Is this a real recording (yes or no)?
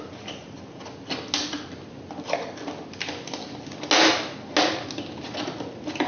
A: yes